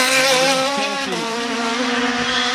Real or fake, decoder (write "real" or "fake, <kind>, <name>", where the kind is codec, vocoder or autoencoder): fake, vocoder, BigVGAN v2